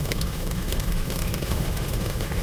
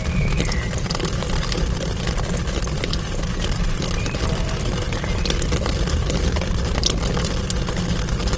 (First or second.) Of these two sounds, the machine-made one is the first